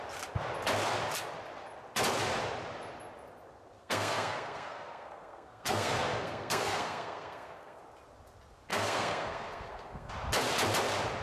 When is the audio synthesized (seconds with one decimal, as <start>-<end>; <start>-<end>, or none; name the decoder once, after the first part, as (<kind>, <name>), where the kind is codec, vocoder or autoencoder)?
3.8-7.8 (codec, SNAC); 8.7-10.1